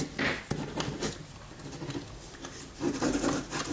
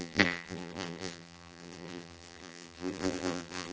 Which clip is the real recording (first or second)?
first